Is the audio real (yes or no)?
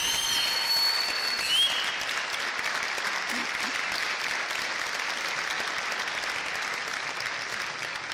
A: yes